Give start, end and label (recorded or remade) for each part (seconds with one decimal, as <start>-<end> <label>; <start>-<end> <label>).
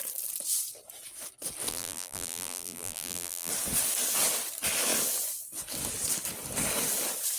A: 0.0-1.7 recorded; 1.7-3.5 remade; 3.5-7.4 recorded